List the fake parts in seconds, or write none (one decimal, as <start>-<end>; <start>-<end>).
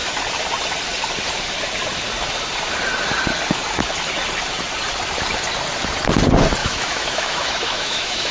6.6-8.3